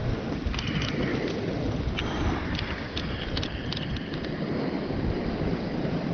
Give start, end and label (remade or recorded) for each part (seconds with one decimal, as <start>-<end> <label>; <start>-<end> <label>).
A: 0.0-6.1 recorded